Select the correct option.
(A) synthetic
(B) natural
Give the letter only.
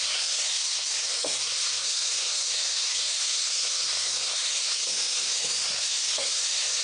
A